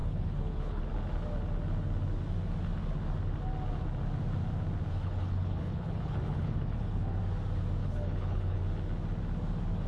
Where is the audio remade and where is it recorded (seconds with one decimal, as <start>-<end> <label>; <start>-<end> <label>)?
0.0-0.8 remade; 0.8-4.9 recorded; 4.9-7.2 remade; 7.2-7.8 recorded; 7.8-8.6 remade; 8.6-9.9 recorded